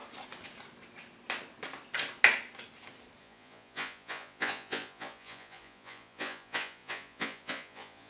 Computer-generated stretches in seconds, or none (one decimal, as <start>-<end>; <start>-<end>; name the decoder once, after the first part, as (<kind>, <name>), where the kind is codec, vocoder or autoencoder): 3.2-8.1 (vocoder, Vocos)